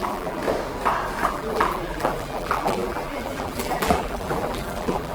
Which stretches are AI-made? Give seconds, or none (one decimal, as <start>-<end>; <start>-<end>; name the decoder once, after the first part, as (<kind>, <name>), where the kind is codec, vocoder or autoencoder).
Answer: 0.0-0.4 (vocoder, BigVGAN v2); 1.3-5.1